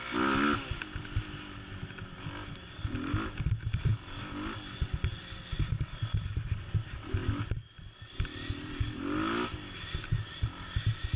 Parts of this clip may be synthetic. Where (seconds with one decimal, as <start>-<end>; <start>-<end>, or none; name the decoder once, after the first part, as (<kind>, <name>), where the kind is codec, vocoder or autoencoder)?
none